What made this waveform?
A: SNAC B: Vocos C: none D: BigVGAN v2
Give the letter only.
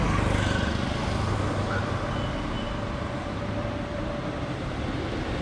C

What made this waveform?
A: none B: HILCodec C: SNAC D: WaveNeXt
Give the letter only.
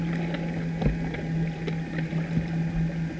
A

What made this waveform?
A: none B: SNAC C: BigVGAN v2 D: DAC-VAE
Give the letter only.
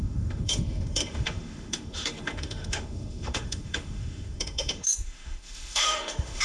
D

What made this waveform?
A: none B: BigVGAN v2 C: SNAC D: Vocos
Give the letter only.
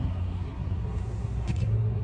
C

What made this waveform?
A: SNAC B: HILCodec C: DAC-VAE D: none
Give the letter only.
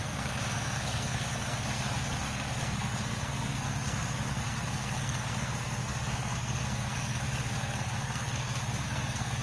A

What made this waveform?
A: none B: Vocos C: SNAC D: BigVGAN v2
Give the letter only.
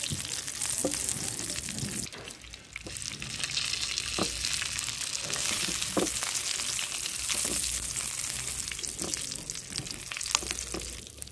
A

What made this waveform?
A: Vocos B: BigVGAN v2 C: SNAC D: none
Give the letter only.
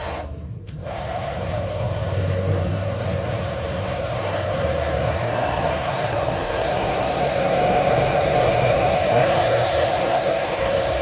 C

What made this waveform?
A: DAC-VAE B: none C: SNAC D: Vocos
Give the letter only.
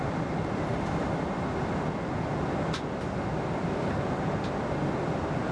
B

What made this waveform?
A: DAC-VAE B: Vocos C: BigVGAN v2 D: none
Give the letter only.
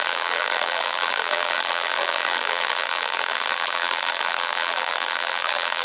C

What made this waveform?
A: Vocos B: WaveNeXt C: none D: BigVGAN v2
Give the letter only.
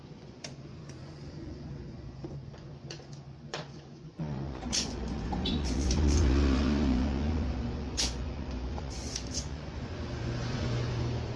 A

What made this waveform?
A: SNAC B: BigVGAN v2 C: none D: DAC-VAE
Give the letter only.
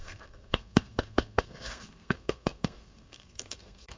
A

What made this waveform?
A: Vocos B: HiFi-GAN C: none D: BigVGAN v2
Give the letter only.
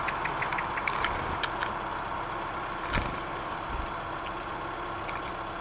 C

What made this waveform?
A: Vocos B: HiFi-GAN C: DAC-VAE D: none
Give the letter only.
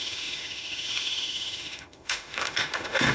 C